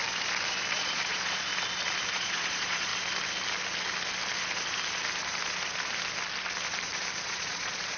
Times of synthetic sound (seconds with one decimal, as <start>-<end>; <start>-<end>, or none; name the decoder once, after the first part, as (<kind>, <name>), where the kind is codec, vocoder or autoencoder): 0.8-1.5 (vocoder, Vocos); 2.1-2.9; 7.2-8.0